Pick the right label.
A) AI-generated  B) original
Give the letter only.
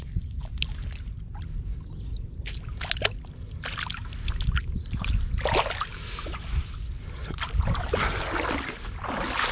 B